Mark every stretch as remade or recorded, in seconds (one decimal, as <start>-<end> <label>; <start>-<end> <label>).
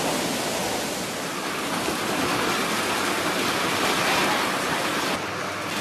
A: 0.0-5.8 recorded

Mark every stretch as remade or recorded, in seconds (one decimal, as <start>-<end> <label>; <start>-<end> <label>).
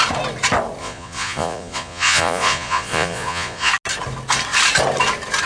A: 0.0-0.8 recorded; 0.8-3.7 remade; 3.7-5.5 recorded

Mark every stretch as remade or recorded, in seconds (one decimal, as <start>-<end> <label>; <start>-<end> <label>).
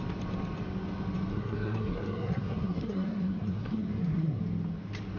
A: 0.0-1.3 recorded; 1.3-4.4 remade; 4.4-5.2 recorded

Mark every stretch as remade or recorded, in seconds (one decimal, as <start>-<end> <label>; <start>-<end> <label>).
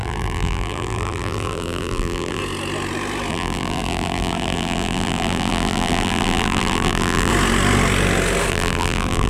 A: 0.0-2.4 remade; 2.4-3.3 recorded; 3.3-7.3 remade; 7.3-8.5 recorded; 8.5-9.3 remade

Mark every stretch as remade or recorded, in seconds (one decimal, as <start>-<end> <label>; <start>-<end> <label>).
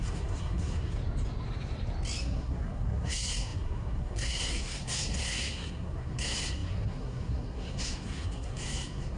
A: 0.0-1.0 remade; 1.0-2.2 recorded; 2.2-9.2 remade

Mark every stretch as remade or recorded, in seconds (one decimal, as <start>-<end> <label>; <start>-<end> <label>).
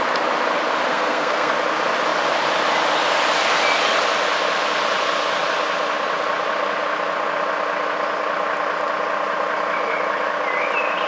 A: 0.0-0.9 recorded; 0.9-1.5 remade; 1.5-11.1 recorded